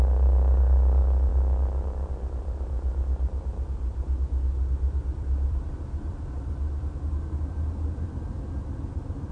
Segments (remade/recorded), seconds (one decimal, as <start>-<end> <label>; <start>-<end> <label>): 0.0-9.3 remade